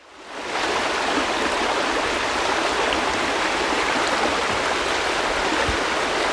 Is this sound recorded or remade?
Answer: recorded